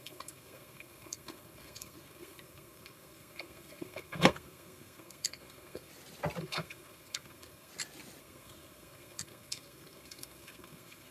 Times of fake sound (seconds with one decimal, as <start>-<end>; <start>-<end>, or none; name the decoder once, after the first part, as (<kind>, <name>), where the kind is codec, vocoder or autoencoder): 0.0-5.9 (codec, SNAC); 6.4-7.7; 8.2-11.1